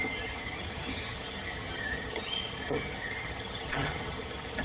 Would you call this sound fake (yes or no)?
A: yes